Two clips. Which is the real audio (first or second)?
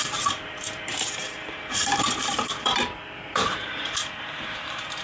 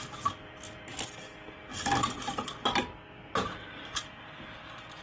second